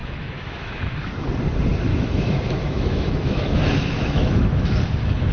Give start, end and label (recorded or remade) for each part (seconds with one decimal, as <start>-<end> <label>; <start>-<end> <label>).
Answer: 0.0-1.1 remade; 1.1-1.9 recorded; 1.9-5.3 remade

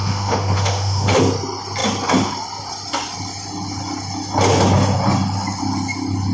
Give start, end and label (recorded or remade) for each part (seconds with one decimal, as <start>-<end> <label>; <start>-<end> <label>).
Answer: 0.0-1.2 remade; 1.2-6.3 recorded

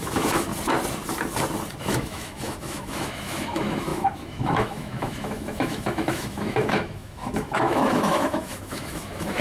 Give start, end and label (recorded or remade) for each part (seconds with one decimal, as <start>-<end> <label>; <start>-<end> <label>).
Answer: 0.0-0.5 remade; 0.5-1.8 recorded; 1.8-9.4 remade

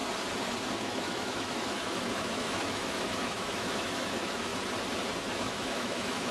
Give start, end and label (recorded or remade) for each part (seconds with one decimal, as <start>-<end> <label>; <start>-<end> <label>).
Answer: 0.0-0.8 recorded; 0.8-4.5 remade; 4.5-5.3 recorded; 5.3-6.3 remade

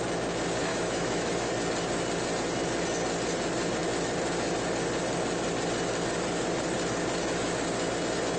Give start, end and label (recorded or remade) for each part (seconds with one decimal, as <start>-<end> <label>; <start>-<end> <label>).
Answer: 0.0-0.7 recorded; 0.7-1.5 remade; 1.5-8.4 recorded